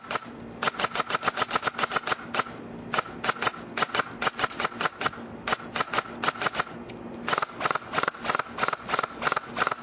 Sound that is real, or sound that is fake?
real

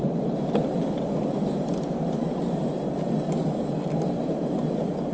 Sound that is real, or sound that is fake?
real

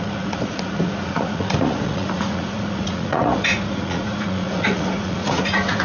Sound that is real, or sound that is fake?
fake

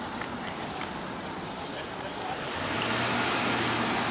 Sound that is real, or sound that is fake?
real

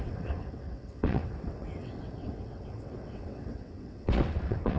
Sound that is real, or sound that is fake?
fake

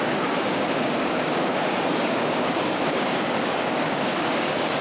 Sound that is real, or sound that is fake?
fake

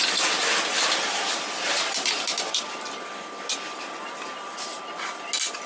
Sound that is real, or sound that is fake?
real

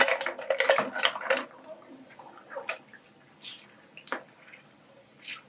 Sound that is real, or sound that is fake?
real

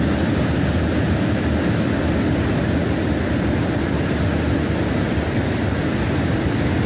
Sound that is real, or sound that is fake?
real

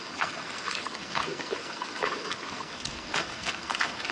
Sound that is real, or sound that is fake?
fake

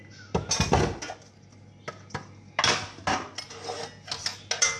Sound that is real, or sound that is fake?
real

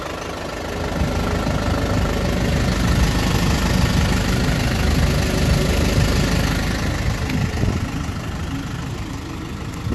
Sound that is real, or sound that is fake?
real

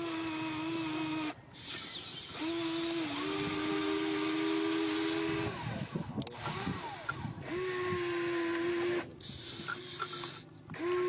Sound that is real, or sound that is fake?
real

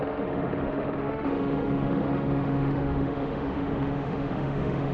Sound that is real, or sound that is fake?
fake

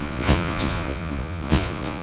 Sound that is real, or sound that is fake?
fake